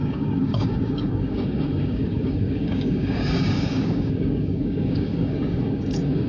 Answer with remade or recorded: remade